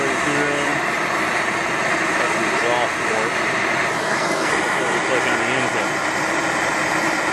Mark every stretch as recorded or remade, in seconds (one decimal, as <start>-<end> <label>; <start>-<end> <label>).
0.0-4.0 recorded; 4.0-4.5 remade; 4.5-7.3 recorded